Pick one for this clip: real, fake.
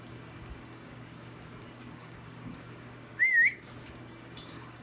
fake